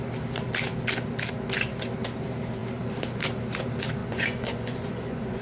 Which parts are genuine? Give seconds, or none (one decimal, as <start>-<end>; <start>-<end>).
0.0-4.0